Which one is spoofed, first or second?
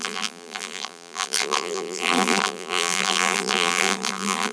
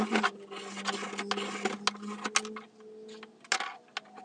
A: first